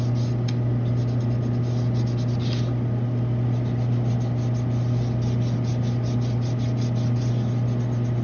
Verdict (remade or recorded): recorded